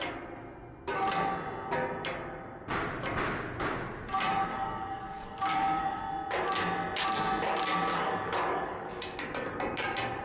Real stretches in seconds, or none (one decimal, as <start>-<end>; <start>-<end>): 0.0-4.5; 6.0-7.9; 8.9-10.2